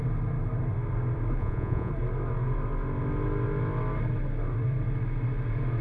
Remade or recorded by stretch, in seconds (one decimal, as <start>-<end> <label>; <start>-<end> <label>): 0.0-1.4 recorded; 1.4-1.9 remade; 1.9-5.8 recorded